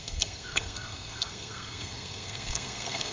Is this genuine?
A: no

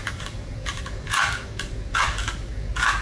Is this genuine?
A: no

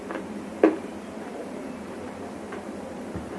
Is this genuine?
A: no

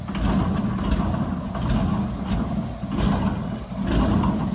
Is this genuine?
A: yes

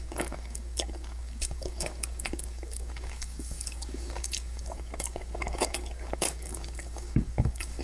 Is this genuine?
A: no